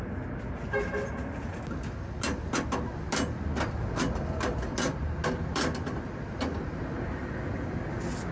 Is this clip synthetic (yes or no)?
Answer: no